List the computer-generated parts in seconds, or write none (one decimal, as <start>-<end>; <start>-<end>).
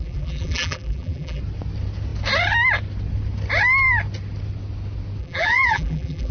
0.0-1.4; 5.2-6.3